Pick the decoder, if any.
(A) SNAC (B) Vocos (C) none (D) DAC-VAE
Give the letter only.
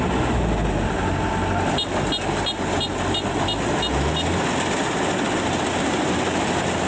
C